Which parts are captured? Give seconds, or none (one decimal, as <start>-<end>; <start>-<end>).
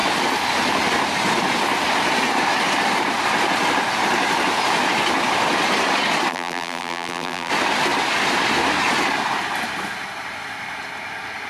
0.0-6.3; 7.5-11.5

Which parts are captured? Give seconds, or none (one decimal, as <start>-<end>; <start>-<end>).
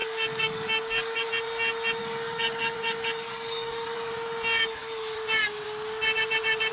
1.3-2.0; 4.1-6.7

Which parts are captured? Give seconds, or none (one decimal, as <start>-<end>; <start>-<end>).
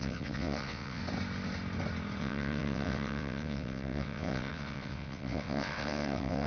1.0-2.2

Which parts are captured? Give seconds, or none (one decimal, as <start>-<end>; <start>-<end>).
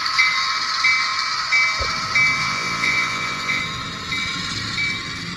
0.0-2.4; 3.6-5.4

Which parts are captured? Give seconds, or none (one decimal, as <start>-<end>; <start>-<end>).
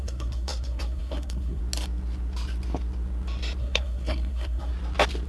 1.6-3.6; 4.7-5.3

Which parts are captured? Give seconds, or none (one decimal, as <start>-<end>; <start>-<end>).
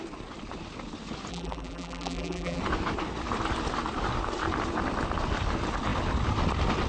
0.0-1.3; 2.6-6.9